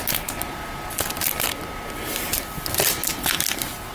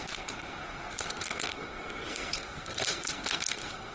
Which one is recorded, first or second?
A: first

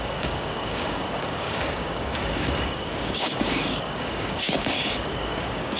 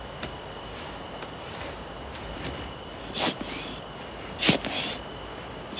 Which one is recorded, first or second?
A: second